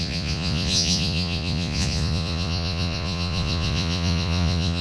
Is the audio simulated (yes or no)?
yes